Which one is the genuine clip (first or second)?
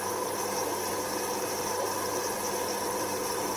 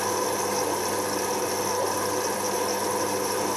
second